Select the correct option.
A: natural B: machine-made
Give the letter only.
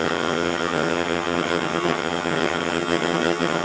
B